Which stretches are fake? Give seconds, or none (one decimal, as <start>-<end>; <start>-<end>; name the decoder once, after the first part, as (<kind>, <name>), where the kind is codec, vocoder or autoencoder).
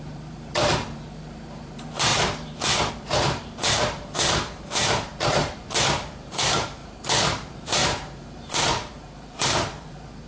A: 0.0-10.3 (vocoder, BigVGAN v2)